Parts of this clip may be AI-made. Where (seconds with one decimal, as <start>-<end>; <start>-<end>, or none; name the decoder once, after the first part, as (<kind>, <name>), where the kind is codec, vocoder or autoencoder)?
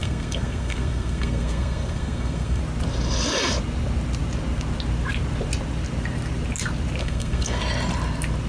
0.0-2.6 (codec, SNAC); 7.0-7.6